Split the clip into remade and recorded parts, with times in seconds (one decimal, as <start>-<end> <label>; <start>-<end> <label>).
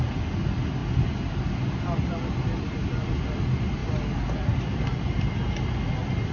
0.0-6.3 recorded